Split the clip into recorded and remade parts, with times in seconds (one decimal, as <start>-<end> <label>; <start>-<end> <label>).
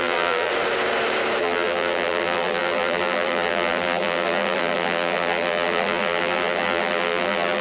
0.0-0.5 remade; 0.5-1.4 recorded; 1.4-7.6 remade